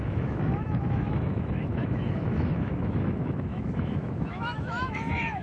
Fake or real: fake